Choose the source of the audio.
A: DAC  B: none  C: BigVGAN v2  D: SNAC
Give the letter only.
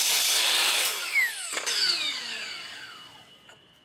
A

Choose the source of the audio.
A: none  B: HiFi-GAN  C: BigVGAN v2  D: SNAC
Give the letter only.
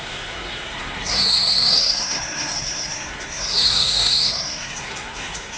D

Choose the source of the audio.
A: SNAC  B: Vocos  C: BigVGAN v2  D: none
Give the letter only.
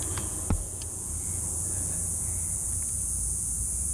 B